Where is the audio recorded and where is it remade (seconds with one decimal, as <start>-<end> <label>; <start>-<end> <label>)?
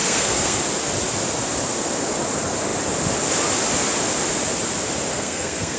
0.0-0.6 remade; 0.6-5.1 recorded; 5.1-5.8 remade